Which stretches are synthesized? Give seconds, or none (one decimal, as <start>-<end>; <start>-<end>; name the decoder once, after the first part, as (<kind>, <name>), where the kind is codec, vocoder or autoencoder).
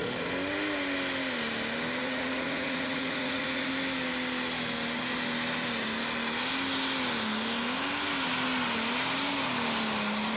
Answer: 2.0-3.7 (vocoder, Vocos)